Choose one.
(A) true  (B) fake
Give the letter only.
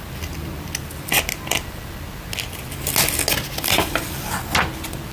A